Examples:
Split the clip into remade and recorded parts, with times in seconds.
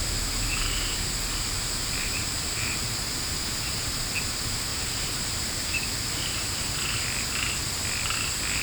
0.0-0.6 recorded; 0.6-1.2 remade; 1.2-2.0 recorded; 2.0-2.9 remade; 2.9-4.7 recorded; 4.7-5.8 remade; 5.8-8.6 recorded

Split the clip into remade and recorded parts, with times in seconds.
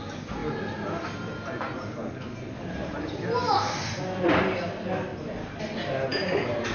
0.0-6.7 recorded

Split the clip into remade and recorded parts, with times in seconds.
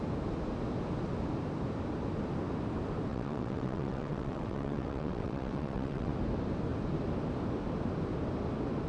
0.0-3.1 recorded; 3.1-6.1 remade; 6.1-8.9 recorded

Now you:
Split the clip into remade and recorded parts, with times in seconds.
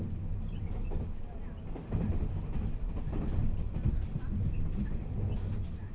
0.0-5.9 recorded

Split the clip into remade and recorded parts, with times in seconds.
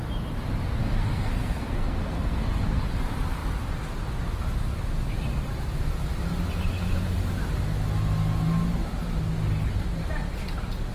0.0-0.8 recorded; 0.8-2.8 remade; 2.8-10.9 recorded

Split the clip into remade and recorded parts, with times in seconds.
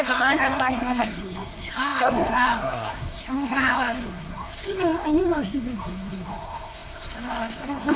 0.0-8.0 remade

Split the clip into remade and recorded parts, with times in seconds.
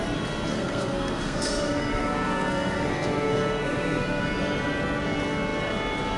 0.0-0.5 recorded; 0.5-4.2 remade; 4.2-6.2 recorded